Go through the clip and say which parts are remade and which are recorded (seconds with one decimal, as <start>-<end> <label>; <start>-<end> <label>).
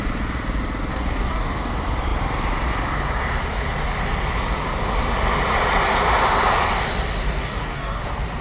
0.0-0.9 recorded; 0.9-1.7 remade; 1.7-7.4 recorded; 7.4-8.0 remade; 8.0-8.4 recorded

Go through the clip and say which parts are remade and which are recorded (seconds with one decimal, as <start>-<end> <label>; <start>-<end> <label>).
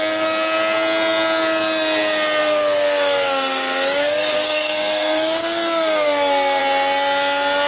0.0-2.4 recorded; 2.4-6.6 remade; 6.6-7.7 recorded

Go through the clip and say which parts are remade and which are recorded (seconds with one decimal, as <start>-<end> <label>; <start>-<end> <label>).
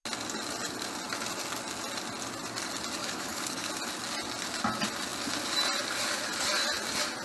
0.0-3.0 recorded; 3.0-3.7 remade; 3.7-7.2 recorded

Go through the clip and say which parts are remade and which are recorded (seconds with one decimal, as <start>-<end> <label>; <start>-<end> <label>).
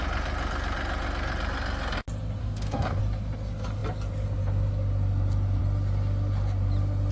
0.0-2.4 recorded; 2.4-3.0 remade; 3.0-7.1 recorded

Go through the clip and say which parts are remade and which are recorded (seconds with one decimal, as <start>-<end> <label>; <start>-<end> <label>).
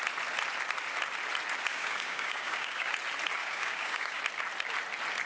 0.0-1.7 recorded; 1.7-2.9 remade; 2.9-3.4 recorded; 3.4-4.2 remade; 4.2-5.3 recorded